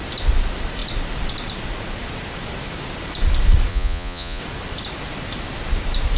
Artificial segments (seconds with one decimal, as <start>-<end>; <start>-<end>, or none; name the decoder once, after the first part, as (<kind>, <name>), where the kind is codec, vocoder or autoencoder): 3.7-4.4 (vocoder, Vocos)